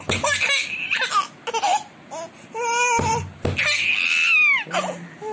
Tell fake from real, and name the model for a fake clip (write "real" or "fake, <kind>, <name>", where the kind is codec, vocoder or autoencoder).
real